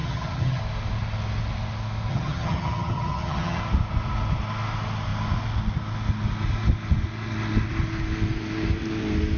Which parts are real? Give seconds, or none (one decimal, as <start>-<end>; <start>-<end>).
0.6-2.1; 3.6-9.4